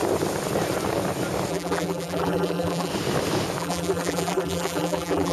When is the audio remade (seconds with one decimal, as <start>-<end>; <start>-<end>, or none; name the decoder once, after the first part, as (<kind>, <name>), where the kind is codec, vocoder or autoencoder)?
1.5-2.9 (vocoder, BigVGAN v2); 3.6-5.3